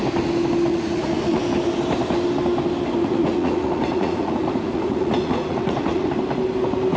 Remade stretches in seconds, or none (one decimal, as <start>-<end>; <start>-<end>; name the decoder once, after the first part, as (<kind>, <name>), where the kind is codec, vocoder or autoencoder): 0.7-1.4 (vocoder, Vocos); 3.0-6.1